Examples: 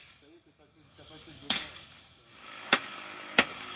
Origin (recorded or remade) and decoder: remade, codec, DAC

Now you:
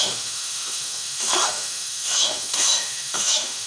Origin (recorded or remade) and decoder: remade, autoencoder, DAC-VAE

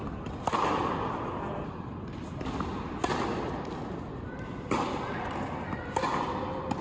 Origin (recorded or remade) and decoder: recorded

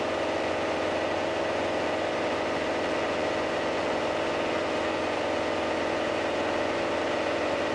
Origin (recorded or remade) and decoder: remade, vocoder, Vocos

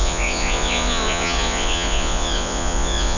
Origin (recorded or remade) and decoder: remade, vocoder, Vocos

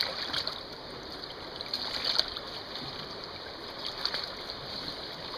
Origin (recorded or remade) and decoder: recorded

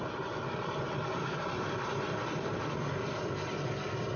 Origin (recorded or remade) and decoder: recorded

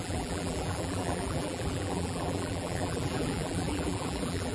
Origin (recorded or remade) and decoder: remade, vocoder, BigVGAN v2